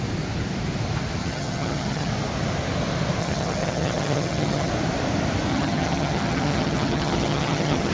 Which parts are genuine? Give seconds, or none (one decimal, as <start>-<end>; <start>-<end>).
0.0-1.2; 2.1-3.2; 4.7-5.5